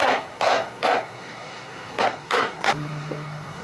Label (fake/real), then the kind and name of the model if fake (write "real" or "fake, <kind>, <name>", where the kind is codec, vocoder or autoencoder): fake, codec, SNAC